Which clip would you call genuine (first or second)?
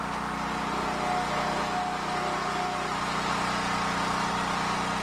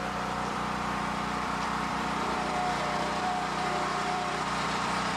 first